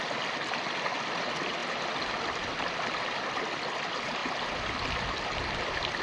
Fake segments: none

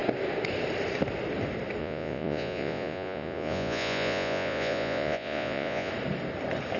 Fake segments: 1.8-5.9 (vocoder, Vocos)

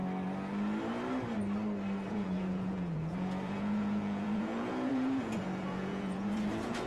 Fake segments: 2.1-6.9 (vocoder, Vocos)

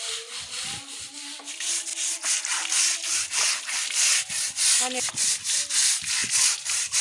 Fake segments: none

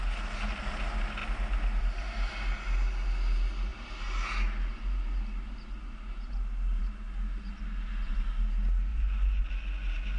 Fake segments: 8.9-9.5 (vocoder, Vocos)

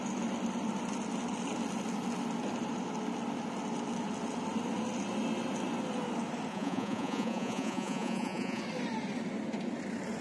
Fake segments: 6.5-8.6 (vocoder, Vocos)

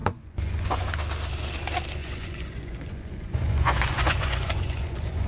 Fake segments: 0.0-0.9 (vocoder, Vocos); 2.0-5.3